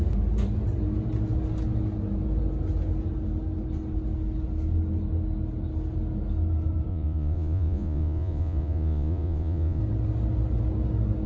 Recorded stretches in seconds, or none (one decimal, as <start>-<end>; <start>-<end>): 0.0-6.9; 9.8-11.3